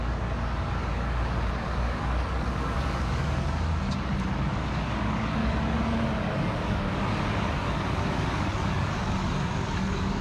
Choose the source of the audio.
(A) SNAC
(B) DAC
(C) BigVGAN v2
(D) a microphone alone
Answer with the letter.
B